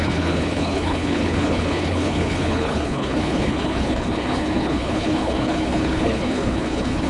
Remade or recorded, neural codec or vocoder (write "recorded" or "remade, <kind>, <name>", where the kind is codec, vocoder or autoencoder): remade, codec, HILCodec